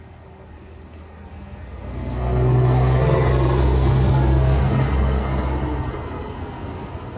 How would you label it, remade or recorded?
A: remade